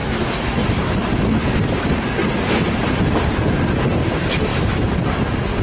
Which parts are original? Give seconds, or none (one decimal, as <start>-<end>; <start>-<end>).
0.0-5.6